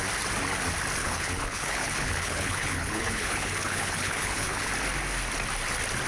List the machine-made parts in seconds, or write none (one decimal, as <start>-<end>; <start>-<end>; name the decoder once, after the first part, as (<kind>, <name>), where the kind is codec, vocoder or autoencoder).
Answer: 1.0-4.7 (codec, HILCodec)